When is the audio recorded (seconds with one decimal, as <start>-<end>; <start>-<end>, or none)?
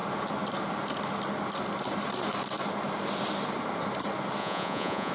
0.0-4.4